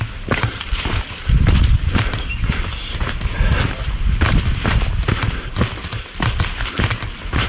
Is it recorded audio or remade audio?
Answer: recorded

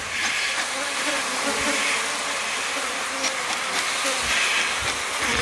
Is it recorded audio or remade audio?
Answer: recorded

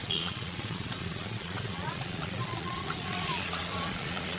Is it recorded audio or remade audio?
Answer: remade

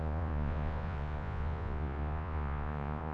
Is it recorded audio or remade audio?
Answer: remade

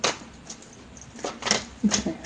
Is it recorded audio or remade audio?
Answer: recorded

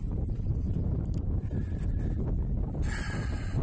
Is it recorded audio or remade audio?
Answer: recorded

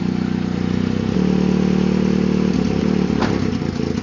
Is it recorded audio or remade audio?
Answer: recorded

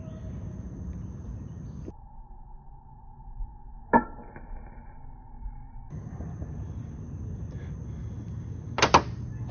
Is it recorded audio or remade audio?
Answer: recorded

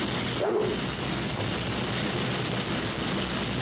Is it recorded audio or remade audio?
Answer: recorded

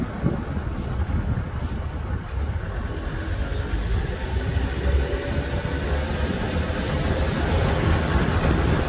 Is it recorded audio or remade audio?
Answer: recorded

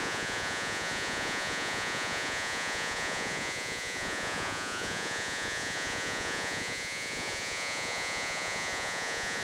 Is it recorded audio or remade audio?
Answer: remade